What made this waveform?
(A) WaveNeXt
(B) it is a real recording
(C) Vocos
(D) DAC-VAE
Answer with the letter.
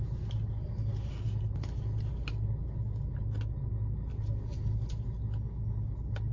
B